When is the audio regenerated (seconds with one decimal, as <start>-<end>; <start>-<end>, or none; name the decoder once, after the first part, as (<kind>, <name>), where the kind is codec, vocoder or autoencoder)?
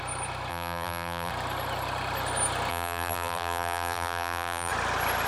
0.5-1.3 (vocoder, BigVGAN v2); 2.7-4.7